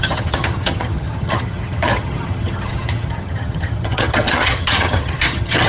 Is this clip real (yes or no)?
no